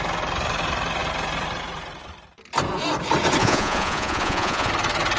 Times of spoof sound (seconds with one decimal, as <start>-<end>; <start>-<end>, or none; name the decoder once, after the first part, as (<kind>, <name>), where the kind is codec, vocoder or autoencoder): 3.4-4.7 (vocoder, Vocos)